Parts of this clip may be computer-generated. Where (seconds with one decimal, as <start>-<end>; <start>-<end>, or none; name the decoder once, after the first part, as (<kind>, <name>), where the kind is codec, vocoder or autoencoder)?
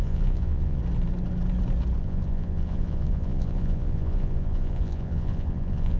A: 0.0-0.8 (vocoder, Vocos); 2.0-6.0